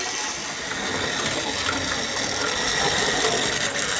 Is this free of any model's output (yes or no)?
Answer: yes